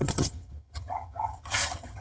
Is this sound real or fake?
fake